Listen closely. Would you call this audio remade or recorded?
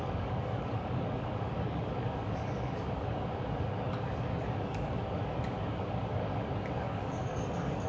remade